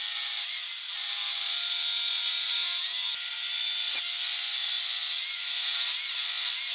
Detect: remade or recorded recorded